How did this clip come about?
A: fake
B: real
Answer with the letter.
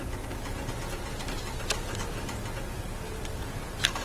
B